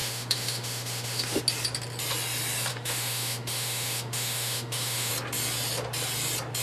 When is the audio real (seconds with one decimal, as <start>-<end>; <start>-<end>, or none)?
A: 1.4-2.7; 5.1-6.6